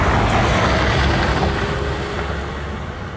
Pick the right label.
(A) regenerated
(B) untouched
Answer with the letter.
B